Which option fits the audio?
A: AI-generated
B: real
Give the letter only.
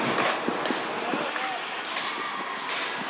B